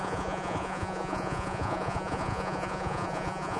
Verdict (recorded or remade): remade